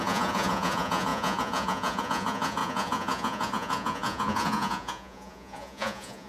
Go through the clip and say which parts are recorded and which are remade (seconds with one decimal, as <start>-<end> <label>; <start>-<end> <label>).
0.0-6.3 remade